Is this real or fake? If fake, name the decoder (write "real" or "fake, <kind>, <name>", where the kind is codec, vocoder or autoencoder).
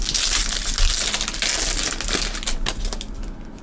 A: real